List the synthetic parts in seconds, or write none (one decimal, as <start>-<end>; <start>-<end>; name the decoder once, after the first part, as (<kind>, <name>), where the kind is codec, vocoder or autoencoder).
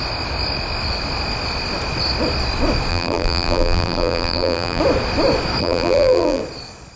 2.9-4.8 (vocoder, BigVGAN v2); 5.6-6.4